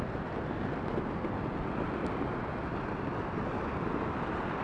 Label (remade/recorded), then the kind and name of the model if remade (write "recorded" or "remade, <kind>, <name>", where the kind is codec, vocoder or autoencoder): recorded